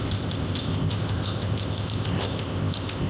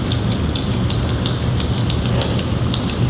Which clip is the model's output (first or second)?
first